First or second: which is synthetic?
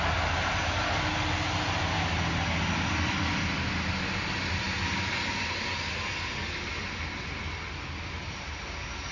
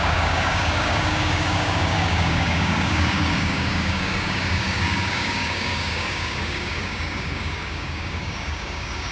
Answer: second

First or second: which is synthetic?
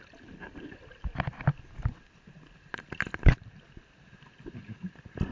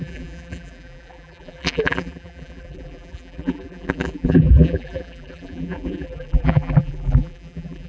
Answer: second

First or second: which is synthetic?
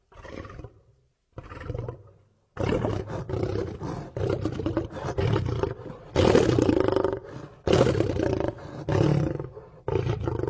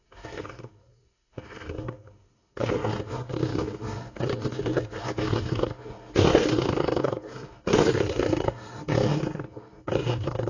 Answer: second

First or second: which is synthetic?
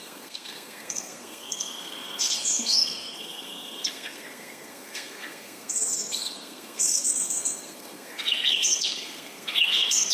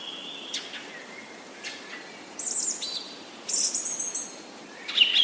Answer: first